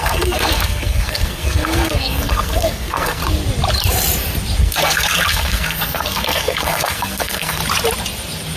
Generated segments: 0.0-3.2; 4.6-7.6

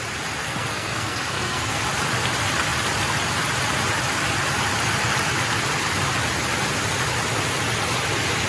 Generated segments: 0.4-1.8

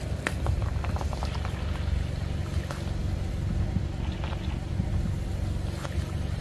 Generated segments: none

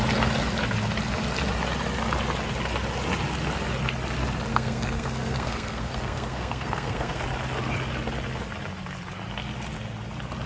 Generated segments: 4.5-7.2